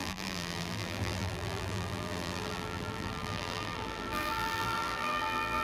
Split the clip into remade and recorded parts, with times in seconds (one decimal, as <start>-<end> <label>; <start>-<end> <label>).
0.0-5.6 remade